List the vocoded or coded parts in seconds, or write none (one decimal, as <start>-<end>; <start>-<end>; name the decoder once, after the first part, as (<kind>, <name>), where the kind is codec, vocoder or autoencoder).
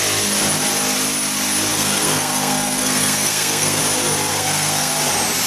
1.7-3.8 (codec, SNAC); 4.3-4.9